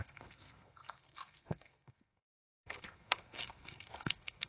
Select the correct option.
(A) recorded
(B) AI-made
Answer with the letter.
B